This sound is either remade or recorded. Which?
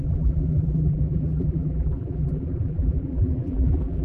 remade